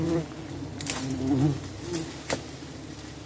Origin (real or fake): real